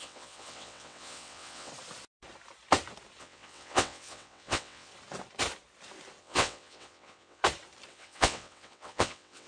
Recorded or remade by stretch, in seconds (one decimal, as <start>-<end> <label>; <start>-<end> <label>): 0.0-1.7 remade; 1.7-3.2 recorded; 3.2-4.9 remade; 4.9-6.2 recorded; 6.2-7.4 remade; 7.4-7.9 recorded; 7.9-9.5 remade